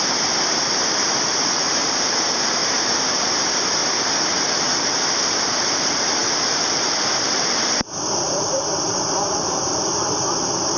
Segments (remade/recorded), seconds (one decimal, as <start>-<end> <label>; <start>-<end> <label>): 0.0-2.6 remade; 2.6-3.3 recorded; 3.3-3.8 remade; 3.8-5.4 recorded; 5.4-10.8 remade

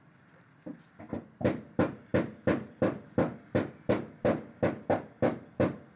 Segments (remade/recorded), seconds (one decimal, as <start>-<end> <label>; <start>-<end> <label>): 0.0-6.0 remade

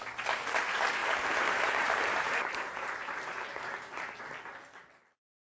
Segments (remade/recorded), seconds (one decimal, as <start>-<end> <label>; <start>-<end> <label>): 0.0-1.0 recorded; 1.0-4.2 remade; 4.2-5.4 recorded

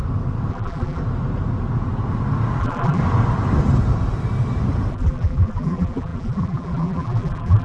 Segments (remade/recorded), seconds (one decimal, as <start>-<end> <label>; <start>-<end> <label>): 0.0-0.5 recorded; 0.5-1.0 remade; 1.0-2.6 recorded; 2.6-3.0 remade; 3.0-4.9 recorded; 4.9-7.6 remade

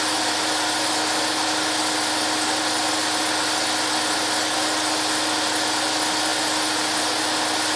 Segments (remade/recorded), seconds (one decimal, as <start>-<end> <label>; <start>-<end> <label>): 0.0-7.8 recorded